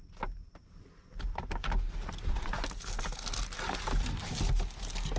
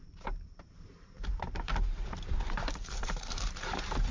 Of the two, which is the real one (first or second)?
first